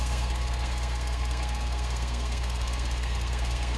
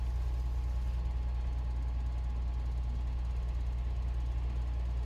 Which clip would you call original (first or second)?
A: second